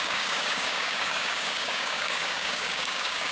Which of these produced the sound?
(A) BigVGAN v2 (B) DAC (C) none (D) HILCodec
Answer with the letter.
B